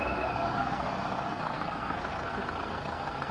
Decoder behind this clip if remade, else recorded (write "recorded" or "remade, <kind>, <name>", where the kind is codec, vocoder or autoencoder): remade, codec, SNAC